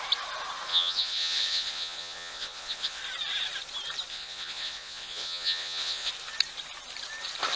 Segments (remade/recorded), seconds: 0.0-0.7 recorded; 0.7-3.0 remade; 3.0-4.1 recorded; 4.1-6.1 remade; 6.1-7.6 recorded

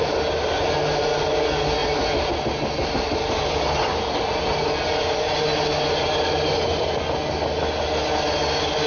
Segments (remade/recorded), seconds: 0.0-8.9 recorded

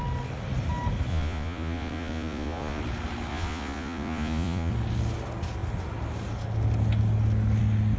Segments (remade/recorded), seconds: 0.0-1.1 recorded; 1.1-2.8 remade; 2.8-3.3 recorded; 3.3-4.7 remade; 4.7-8.0 recorded

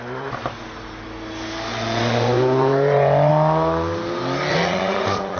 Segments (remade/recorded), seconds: 0.0-1.7 recorded; 1.7-3.3 remade; 3.3-4.5 recorded; 4.5-5.4 remade

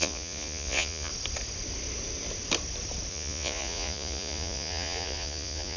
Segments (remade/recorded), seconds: 0.0-1.1 remade; 1.1-3.1 recorded; 3.1-5.8 remade

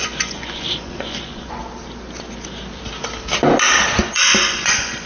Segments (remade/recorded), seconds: 0.0-1.6 remade; 1.6-4.0 recorded; 4.0-5.1 remade

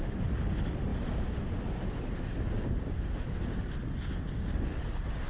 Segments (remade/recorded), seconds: 0.0-5.3 recorded

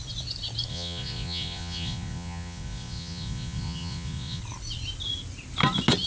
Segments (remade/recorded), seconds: 0.0-0.7 recorded; 0.7-4.4 remade; 4.4-6.1 recorded